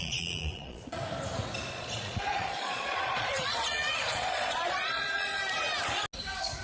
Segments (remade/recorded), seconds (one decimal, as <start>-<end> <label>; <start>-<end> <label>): 0.0-1.0 remade; 1.0-1.7 recorded; 1.7-5.4 remade; 5.4-6.6 recorded